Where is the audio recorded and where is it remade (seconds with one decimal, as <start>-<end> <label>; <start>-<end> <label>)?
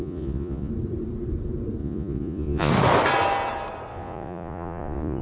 0.0-0.7 remade; 0.7-1.8 recorded; 1.8-2.7 remade; 2.7-3.9 recorded; 3.9-5.2 remade